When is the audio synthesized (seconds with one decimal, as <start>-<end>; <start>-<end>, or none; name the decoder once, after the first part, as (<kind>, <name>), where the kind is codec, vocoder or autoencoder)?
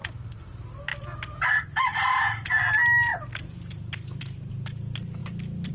0.0-0.5 (vocoder, BigVGAN v2); 0.9-2.6; 3.1-4.5; 5.2-5.7